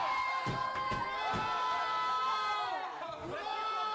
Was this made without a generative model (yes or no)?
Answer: yes